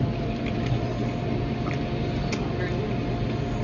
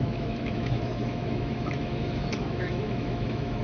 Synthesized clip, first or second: second